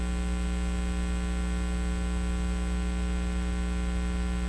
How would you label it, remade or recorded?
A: recorded